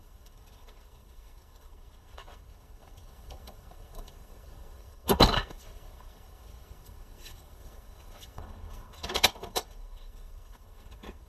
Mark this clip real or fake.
fake